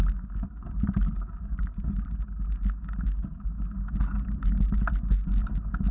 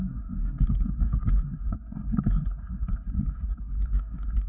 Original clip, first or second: first